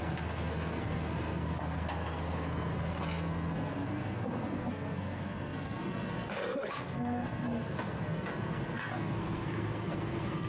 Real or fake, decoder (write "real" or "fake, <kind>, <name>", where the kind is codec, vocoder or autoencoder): fake, codec, SNAC